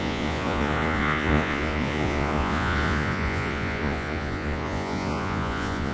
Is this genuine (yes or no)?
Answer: no